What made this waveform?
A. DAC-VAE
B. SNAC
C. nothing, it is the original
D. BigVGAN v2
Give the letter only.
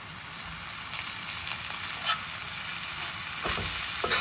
C